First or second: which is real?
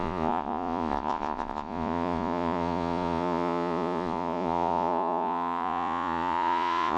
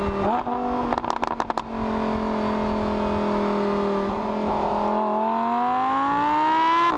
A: second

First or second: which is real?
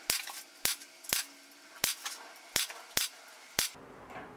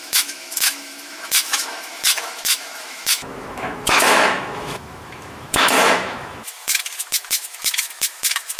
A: first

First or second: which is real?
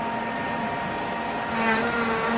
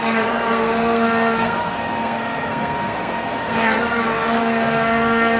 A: first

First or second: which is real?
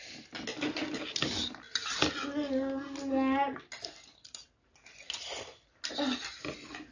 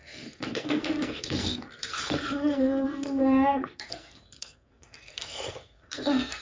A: first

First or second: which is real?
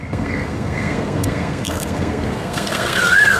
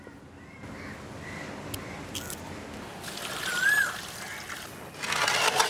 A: second